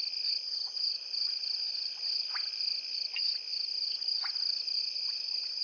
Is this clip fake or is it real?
real